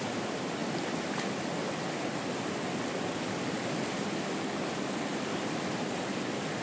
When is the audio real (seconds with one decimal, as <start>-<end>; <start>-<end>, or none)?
0.0-6.6